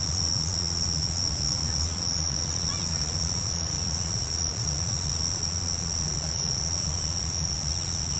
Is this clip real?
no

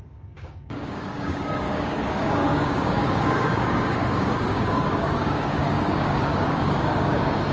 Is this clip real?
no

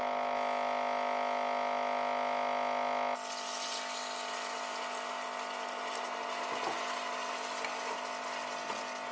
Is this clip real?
yes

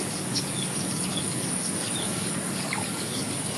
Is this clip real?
no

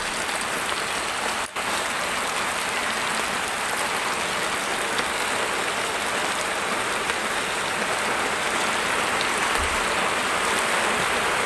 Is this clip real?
yes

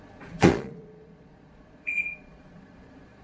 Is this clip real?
no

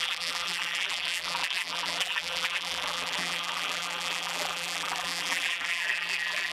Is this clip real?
no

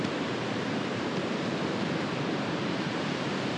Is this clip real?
no